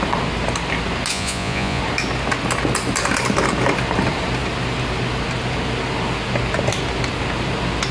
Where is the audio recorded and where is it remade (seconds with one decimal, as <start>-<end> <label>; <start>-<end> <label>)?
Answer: 0.0-1.1 recorded; 1.1-1.8 remade; 1.8-7.9 recorded